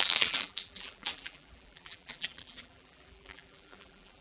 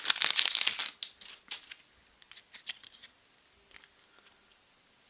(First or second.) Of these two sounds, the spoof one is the first